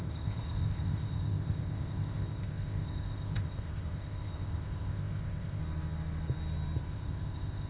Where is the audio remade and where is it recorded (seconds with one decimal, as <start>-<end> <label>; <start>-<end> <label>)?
0.0-5.6 remade; 5.6-6.8 recorded; 6.8-7.7 remade